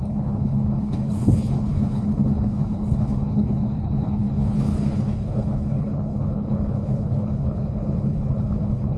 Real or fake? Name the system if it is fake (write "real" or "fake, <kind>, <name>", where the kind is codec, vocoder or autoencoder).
fake, codec, HILCodec